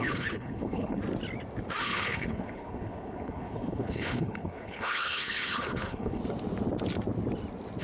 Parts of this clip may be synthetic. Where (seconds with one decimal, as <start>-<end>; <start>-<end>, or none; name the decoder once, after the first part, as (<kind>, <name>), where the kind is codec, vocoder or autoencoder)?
0.0-1.0 (codec, HILCodec); 1.8-6.2